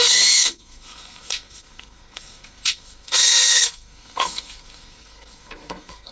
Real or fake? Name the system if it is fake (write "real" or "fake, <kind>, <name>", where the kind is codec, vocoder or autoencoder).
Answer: fake, codec, SNAC